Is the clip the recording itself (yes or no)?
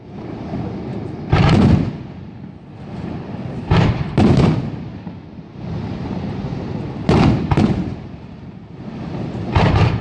no